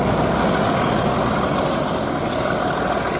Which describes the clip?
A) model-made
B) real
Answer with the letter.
B